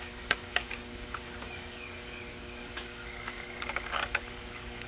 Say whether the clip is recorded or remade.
remade